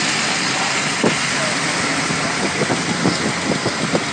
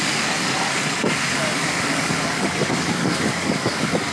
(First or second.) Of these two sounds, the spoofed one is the second